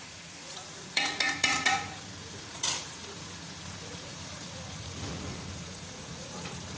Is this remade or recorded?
remade